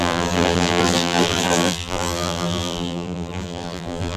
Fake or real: fake